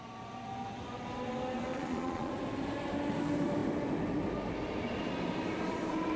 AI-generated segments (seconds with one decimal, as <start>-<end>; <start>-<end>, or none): 1.7-2.3

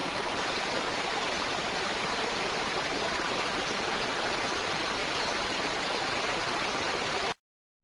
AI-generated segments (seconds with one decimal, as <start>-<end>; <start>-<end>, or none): 0.0-3.3; 5.0-5.5

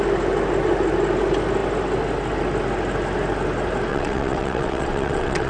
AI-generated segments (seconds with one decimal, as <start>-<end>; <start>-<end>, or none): 3.9-5.5

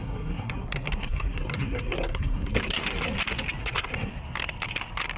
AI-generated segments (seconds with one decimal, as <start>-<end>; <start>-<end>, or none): 0.0-3.1; 3.6-4.1

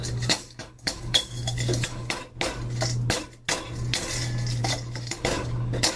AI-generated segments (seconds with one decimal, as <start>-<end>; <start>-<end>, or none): 0.0-2.2; 4.6-6.0

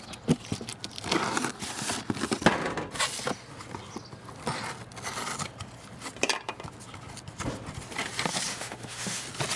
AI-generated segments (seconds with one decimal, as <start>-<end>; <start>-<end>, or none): 8.5-9.2

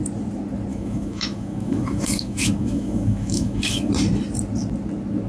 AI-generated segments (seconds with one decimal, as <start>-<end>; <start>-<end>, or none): 0.7-3.9